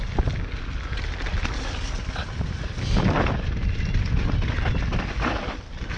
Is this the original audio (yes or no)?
yes